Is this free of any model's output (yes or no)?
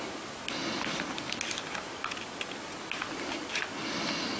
yes